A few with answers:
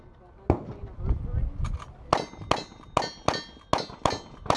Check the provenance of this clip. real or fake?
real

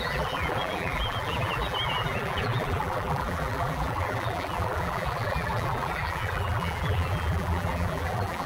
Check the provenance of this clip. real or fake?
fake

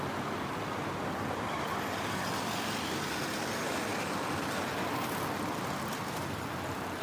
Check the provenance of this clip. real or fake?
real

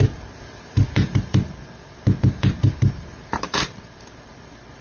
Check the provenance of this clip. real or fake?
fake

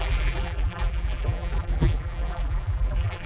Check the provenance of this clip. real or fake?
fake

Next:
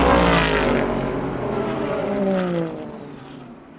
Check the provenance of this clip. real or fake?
fake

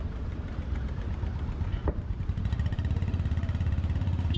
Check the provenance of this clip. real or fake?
fake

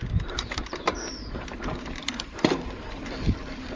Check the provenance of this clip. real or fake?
fake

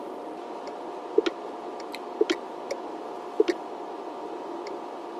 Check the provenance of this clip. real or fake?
real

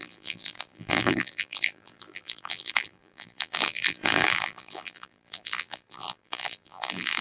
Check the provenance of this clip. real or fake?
fake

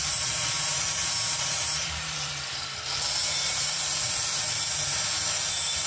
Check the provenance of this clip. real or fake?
fake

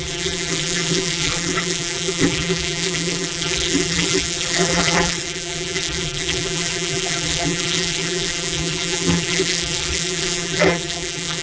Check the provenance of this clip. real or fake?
fake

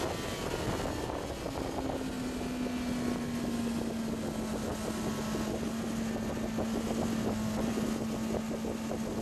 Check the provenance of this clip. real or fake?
real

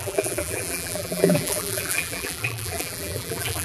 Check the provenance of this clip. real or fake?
fake